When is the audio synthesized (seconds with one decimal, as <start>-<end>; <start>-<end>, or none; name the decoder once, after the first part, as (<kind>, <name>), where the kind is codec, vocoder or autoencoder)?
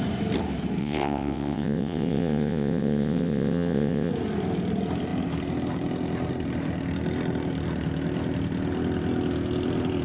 0.8-4.1 (vocoder, WaveNeXt)